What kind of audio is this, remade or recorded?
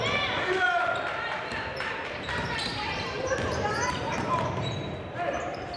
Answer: remade